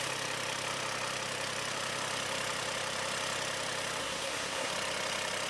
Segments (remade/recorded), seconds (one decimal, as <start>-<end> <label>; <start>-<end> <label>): 0.0-4.0 recorded; 4.0-4.7 remade; 4.7-5.5 recorded